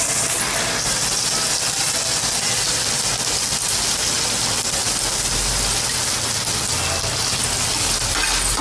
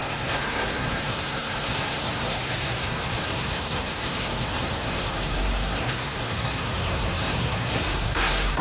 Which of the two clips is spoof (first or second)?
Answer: second